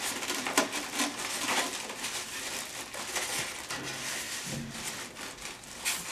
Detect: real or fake real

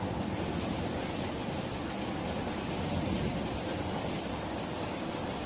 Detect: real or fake real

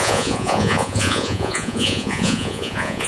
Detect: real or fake fake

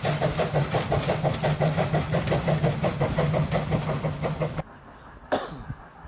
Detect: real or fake real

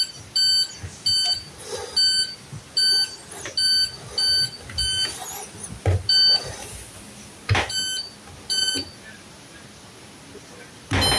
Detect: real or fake real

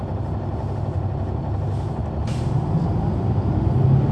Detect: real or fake real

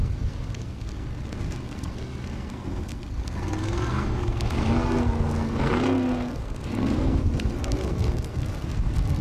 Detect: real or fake fake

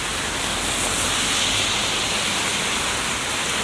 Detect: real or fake real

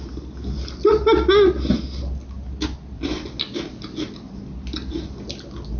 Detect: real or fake real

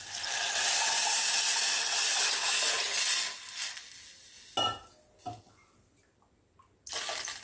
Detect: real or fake real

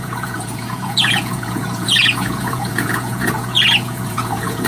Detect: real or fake fake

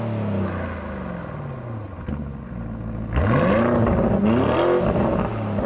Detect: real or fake real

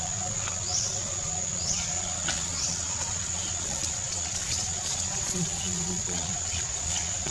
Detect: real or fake fake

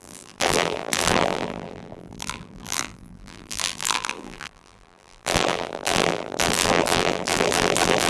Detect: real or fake fake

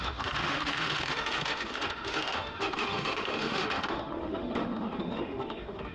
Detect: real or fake fake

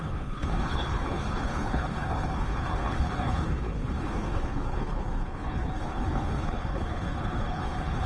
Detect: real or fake fake